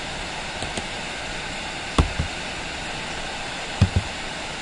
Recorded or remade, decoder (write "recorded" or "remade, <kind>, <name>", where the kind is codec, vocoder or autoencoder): remade, vocoder, BigVGAN v2